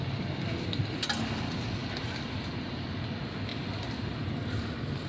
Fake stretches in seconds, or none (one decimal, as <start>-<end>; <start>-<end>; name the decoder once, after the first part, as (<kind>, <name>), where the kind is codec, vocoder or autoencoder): 1.8-2.4 (vocoder, BigVGAN v2); 3.5-4.6